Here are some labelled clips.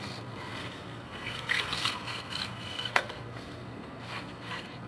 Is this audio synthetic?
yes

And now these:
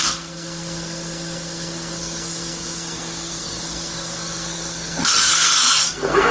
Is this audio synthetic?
yes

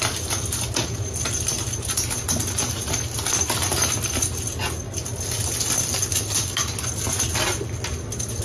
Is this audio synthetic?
no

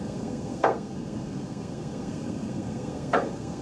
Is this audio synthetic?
yes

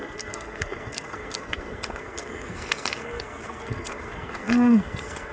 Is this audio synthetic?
yes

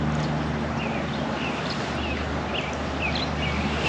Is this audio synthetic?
no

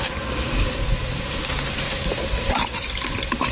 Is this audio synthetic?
no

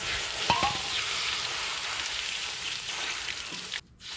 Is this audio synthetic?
no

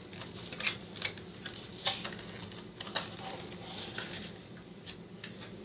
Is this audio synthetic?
no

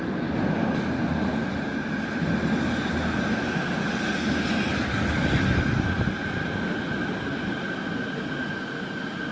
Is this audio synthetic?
no